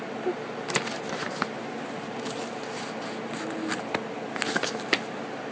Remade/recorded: recorded